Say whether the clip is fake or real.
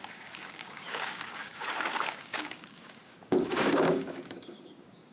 fake